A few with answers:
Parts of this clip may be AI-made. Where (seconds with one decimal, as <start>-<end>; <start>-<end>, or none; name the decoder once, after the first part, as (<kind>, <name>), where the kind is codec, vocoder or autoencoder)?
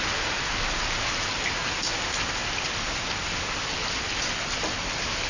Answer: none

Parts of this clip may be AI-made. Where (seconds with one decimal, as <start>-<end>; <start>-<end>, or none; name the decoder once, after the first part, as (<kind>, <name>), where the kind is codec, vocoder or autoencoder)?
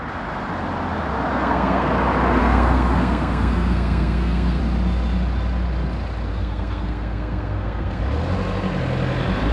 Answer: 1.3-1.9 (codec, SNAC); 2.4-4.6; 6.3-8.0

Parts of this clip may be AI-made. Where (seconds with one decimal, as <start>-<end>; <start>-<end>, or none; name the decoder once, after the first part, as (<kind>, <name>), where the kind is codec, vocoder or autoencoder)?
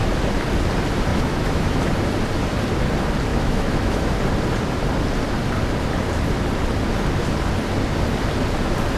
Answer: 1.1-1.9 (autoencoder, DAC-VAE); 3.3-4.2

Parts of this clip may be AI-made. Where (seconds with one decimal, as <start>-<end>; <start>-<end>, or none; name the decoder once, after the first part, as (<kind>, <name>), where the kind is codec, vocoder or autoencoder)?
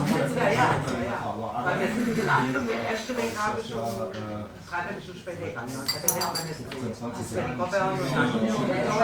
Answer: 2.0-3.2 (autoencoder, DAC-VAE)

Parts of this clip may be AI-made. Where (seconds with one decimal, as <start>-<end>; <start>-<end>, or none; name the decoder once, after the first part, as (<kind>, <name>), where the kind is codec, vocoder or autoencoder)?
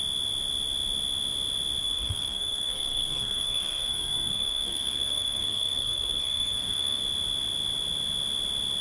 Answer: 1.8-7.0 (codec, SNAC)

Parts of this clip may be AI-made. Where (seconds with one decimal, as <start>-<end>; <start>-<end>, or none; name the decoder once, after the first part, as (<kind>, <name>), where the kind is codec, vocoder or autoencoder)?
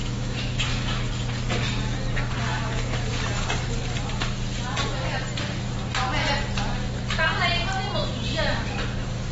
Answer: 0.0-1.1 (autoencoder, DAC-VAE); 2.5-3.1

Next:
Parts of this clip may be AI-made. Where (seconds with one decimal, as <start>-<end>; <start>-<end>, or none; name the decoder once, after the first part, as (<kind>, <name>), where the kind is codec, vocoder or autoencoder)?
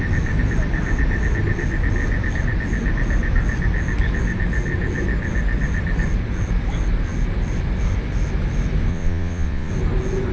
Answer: 8.9-9.7 (vocoder, Vocos)